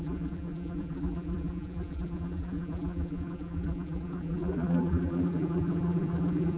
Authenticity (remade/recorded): remade